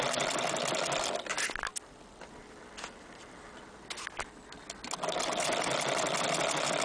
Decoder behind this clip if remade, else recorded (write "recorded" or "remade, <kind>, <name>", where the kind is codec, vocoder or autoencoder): recorded